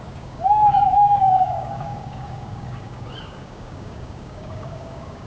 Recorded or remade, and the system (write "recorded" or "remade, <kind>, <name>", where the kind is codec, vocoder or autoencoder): remade, codec, DAC